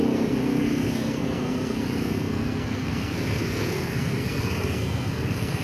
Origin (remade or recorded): remade